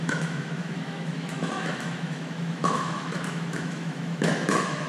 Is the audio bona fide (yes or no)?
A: no